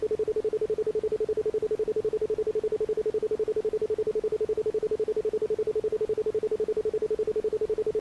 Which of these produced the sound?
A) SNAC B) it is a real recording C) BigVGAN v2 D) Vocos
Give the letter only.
B